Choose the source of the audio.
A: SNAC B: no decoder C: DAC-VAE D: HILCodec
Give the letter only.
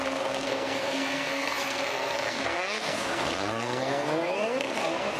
A